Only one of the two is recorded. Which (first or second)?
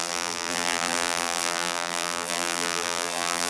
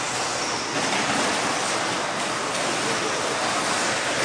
second